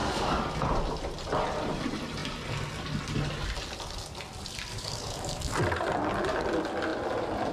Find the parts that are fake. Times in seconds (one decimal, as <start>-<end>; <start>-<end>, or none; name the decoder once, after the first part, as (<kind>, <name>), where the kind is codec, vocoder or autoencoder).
0.0-0.5 (codec, DAC); 4.7-5.6